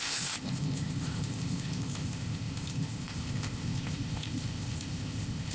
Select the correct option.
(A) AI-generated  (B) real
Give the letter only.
A